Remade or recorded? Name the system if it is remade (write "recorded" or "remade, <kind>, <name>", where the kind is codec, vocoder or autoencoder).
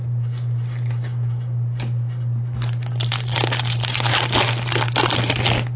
recorded